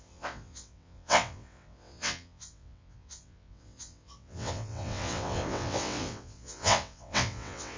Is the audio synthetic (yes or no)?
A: yes